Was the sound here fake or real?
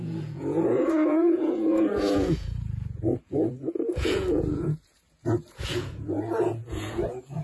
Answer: fake